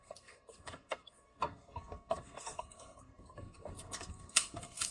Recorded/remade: remade